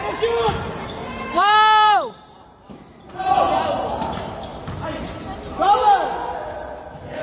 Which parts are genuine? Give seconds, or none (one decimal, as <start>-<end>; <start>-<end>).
4.5-6.3